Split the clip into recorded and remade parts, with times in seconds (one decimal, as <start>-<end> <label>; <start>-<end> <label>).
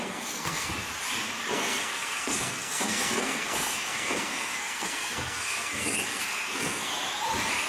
0.0-0.7 remade; 0.7-1.5 recorded; 1.5-6.9 remade; 6.9-7.7 recorded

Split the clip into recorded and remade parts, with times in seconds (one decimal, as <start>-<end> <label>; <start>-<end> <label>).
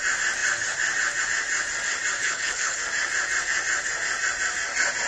0.0-2.2 recorded; 2.2-2.8 remade; 2.8-5.1 recorded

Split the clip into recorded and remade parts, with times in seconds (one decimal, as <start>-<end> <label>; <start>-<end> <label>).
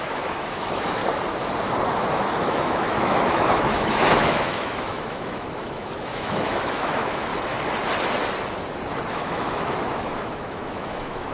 0.0-1.0 remade; 1.0-2.4 recorded; 2.4-7.3 remade; 7.3-9.1 recorded; 9.1-11.3 remade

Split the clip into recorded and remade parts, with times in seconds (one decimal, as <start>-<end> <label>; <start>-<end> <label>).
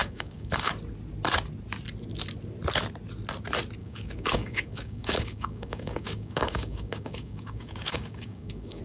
0.0-0.7 remade; 0.7-3.8 recorded; 3.8-8.8 remade